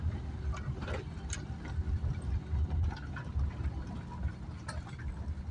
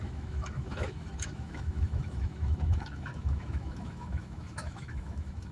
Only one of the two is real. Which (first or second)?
first